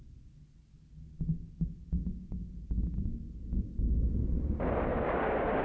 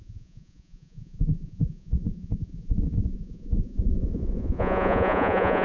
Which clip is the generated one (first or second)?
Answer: second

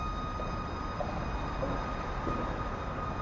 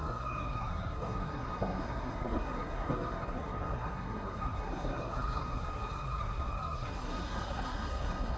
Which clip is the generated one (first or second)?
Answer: second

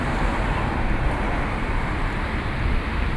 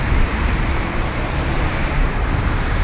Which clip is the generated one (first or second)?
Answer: second